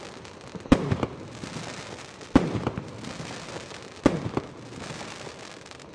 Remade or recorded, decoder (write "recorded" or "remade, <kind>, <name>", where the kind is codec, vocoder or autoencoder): recorded